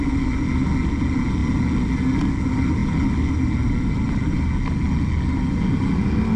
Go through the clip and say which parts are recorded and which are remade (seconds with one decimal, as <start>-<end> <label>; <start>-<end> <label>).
0.0-6.4 recorded